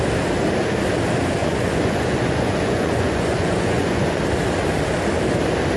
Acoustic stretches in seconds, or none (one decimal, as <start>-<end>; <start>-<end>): 0.0-1.4; 4.2-5.8